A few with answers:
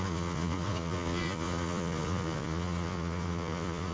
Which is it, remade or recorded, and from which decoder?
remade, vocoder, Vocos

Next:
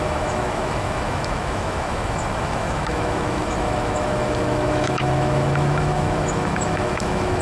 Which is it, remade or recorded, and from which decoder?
remade, autoencoder, DAC-VAE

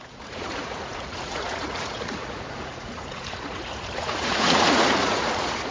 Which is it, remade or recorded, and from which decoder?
remade, vocoder, Vocos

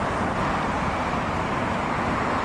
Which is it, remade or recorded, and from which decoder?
recorded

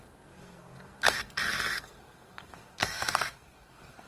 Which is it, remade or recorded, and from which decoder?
remade, codec, SNAC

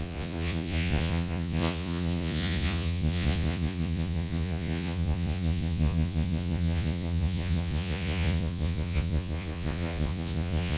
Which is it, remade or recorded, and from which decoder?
remade, vocoder, Vocos